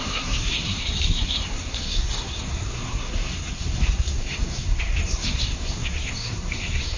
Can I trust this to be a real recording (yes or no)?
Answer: no